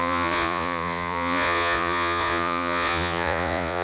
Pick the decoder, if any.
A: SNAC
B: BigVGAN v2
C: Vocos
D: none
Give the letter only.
C